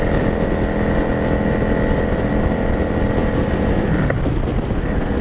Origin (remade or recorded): recorded